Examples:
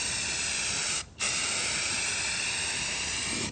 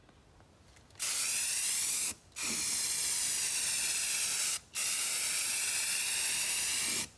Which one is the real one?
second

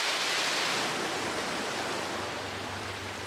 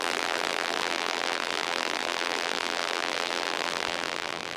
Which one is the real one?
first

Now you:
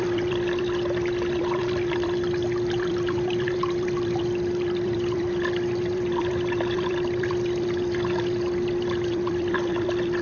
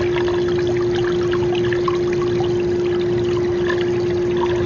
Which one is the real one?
second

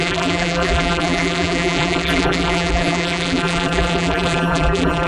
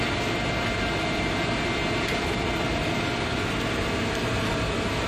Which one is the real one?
second